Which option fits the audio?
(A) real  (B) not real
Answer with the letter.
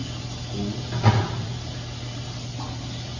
A